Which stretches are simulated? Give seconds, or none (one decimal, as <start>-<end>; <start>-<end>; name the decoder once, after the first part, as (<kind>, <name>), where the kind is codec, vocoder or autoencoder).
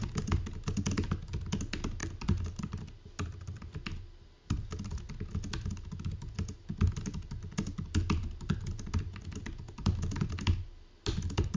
none